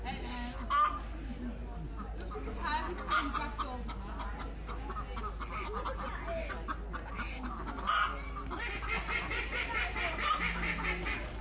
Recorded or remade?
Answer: recorded